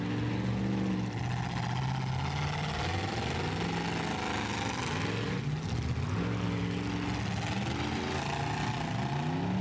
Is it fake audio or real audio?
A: real